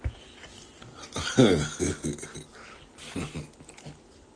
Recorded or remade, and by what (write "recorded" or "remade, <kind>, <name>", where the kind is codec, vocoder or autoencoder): recorded